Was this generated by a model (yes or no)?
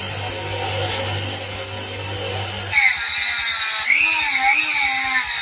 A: no